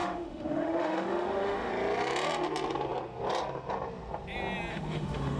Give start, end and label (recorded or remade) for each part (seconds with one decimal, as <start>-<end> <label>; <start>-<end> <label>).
0.0-1.7 remade; 1.7-4.7 recorded; 4.7-5.4 remade